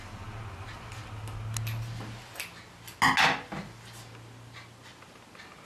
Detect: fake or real real